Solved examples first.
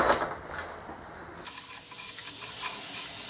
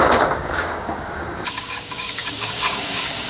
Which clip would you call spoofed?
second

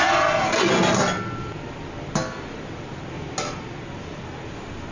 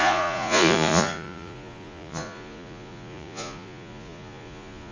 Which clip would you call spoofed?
second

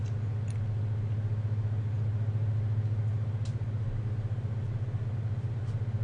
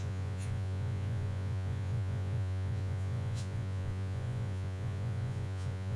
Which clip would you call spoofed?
second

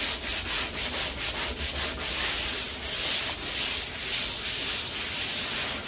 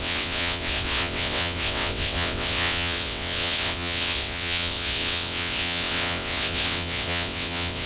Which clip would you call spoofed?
second